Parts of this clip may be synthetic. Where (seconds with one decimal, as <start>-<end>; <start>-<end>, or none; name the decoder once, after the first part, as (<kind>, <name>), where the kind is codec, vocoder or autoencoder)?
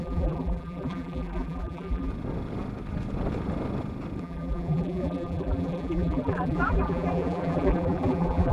0.0-2.1 (vocoder, BigVGAN v2); 4.2-8.5